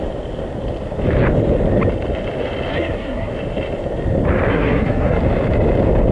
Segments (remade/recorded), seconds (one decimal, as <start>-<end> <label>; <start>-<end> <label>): 0.0-2.7 recorded; 2.7-3.3 remade; 3.3-4.5 recorded; 4.5-5.2 remade; 5.2-6.1 recorded